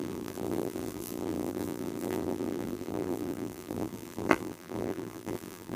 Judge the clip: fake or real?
fake